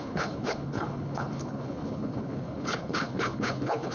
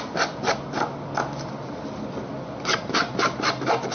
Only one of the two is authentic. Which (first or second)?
second